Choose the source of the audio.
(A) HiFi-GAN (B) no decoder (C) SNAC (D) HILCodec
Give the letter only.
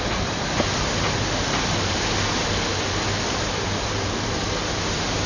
B